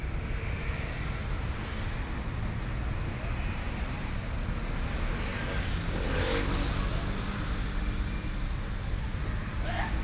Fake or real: real